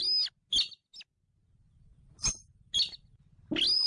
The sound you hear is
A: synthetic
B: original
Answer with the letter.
B